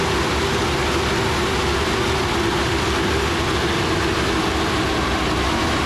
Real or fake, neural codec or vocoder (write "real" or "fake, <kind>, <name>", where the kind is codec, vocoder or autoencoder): real